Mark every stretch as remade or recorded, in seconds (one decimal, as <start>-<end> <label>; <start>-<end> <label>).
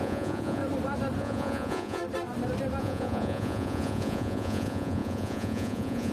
0.0-0.6 remade; 0.6-1.2 recorded; 1.2-2.0 remade; 2.0-2.8 recorded; 2.8-6.1 remade